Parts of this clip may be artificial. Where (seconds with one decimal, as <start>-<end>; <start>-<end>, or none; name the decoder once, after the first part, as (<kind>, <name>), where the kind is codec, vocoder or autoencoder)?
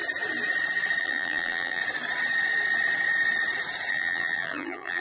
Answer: 1.0-1.8 (vocoder, BigVGAN v2); 3.9-5.0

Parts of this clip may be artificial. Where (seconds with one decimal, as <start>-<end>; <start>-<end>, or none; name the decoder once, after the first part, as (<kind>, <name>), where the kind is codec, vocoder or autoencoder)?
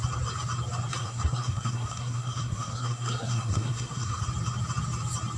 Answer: 1.0-4.2 (codec, SNAC)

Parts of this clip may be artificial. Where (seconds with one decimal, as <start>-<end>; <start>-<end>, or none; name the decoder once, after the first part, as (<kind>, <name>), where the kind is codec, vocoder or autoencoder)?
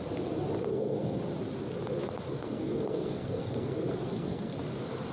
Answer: 0.7-1.2 (codec, SNAC); 2.3-4.6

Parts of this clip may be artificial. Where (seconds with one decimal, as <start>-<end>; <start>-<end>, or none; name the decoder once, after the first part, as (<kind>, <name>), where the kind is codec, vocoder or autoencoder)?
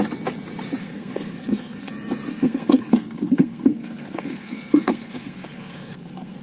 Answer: 0.8-1.9 (codec, SNAC); 2.3-6.4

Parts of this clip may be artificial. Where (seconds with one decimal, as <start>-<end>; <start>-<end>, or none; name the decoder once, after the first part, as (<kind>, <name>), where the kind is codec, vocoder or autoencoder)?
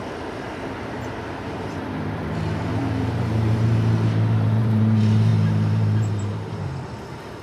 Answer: 0.0-7.4 (vocoder, BigVGAN v2)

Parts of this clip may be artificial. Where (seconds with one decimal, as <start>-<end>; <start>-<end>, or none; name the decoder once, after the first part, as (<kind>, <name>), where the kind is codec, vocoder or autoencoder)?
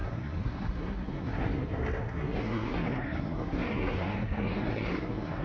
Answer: 0.0-5.4 (codec, SNAC)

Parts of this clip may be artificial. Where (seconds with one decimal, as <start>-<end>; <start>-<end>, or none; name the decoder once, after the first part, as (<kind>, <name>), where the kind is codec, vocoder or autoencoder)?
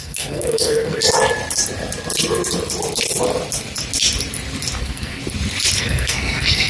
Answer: 0.0-1.0 (codec, SNAC); 4.8-5.2; 5.8-6.7